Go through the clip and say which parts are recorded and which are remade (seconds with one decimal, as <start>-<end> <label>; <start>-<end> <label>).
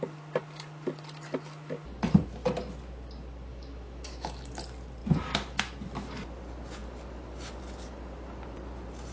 0.0-3.5 recorded; 3.5-4.6 remade; 4.6-9.1 recorded